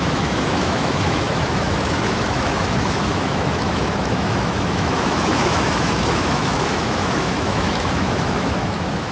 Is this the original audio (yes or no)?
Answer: no